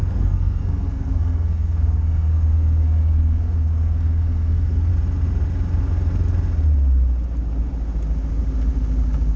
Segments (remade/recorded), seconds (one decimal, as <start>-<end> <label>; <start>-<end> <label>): 0.0-4.9 remade; 4.9-9.4 recorded